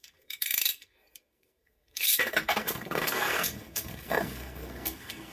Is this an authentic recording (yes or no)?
no